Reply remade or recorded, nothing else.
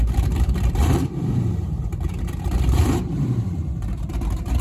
remade